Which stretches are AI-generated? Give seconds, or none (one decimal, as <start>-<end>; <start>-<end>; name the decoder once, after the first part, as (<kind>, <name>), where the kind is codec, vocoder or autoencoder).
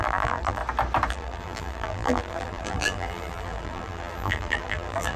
0.0-0.6 (vocoder, BigVGAN v2); 1.1-5.2